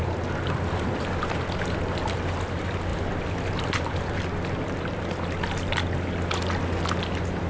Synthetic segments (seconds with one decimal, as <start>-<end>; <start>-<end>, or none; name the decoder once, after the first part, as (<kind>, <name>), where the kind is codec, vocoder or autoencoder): none